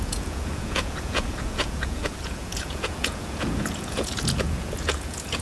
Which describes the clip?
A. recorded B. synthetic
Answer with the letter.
B